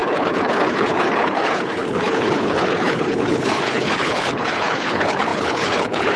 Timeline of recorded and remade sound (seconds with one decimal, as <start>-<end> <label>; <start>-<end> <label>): 0.0-6.2 remade